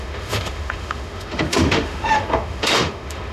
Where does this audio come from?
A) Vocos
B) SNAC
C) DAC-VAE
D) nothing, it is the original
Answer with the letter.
C